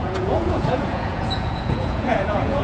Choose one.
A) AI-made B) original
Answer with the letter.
A